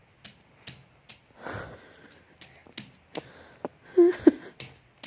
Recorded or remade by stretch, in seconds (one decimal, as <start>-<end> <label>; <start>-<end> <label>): 0.0-5.1 recorded

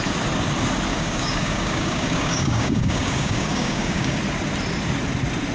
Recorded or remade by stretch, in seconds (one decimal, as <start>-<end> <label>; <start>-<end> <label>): 0.0-0.9 recorded; 0.9-4.2 remade; 4.2-5.5 recorded

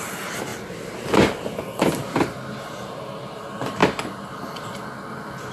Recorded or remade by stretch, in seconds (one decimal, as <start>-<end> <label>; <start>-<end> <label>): 0.0-5.5 recorded

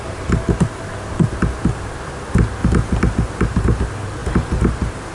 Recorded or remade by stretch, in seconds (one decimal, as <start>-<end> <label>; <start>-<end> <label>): 0.0-2.6 recorded; 2.6-3.4 remade; 3.4-4.2 recorded; 4.2-5.1 remade

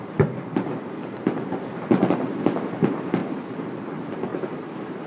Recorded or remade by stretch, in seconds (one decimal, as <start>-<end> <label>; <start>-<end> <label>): 0.0-5.1 recorded

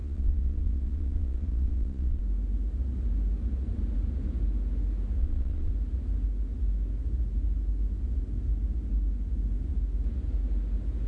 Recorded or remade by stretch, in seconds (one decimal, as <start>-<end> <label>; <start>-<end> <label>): 0.0-2.2 remade; 2.2-5.2 recorded; 5.2-5.7 remade; 5.7-11.1 recorded